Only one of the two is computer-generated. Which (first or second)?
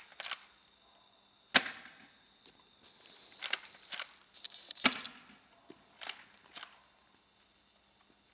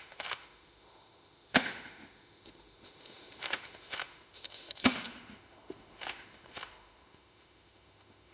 second